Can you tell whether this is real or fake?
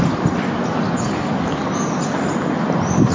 real